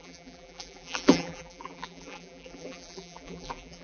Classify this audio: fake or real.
fake